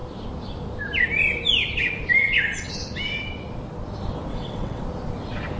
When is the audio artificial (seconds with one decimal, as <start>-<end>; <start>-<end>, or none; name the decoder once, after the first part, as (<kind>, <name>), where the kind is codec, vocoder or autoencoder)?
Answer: 2.2-2.7 (vocoder, WaveNeXt); 4.3-4.8